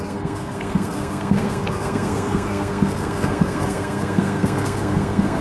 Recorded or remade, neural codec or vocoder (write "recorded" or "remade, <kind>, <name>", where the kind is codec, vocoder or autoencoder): remade, codec, SNAC